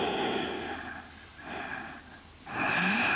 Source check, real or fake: real